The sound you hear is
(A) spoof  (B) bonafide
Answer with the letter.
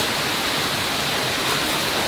B